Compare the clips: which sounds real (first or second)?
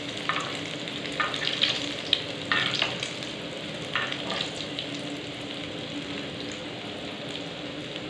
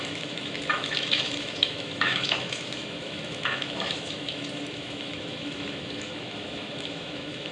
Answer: first